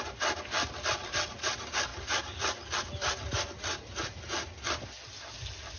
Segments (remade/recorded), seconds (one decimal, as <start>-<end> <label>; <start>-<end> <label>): 0.0-5.8 recorded